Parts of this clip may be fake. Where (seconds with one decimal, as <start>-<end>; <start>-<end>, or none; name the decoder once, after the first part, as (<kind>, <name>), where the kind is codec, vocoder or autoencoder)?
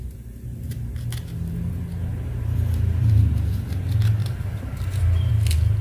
2.1-3.2 (vocoder, BigVGAN v2); 4.2-5.3